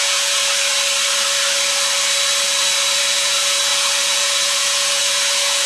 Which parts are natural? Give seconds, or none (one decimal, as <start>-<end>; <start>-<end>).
0.4-3.0